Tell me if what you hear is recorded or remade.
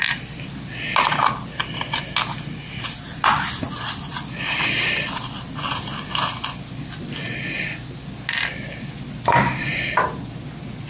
recorded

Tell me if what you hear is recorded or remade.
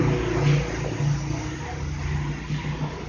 recorded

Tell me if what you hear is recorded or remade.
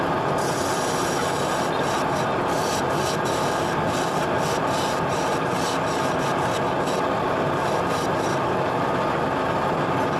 recorded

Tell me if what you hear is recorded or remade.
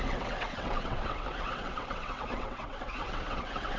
remade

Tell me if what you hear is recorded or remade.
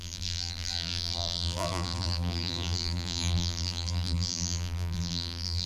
remade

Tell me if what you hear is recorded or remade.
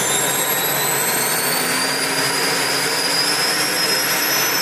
recorded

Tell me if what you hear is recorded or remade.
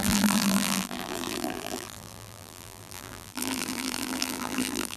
remade